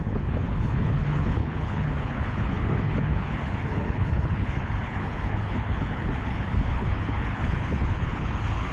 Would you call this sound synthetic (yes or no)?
yes